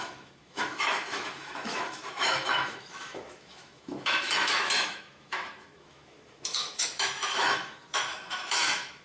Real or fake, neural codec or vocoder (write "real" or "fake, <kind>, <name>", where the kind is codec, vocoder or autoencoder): fake, autoencoder, DAC-VAE